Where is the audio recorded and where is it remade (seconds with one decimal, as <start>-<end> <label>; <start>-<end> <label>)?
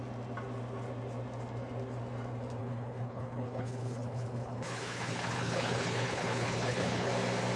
0.0-2.6 recorded; 2.6-7.1 remade; 7.1-7.6 recorded